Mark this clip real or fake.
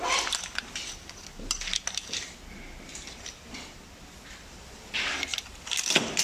real